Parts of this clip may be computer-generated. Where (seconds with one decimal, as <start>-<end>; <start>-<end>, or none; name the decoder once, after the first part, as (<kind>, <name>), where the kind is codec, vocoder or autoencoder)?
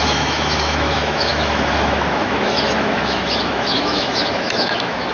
0.0-5.1 (autoencoder, DAC-VAE)